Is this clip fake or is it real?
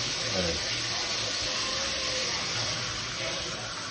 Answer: real